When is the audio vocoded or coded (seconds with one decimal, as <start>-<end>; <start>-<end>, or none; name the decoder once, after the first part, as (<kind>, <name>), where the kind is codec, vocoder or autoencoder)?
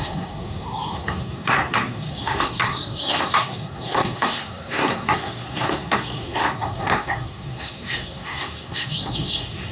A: 0.0-9.7 (codec, SNAC)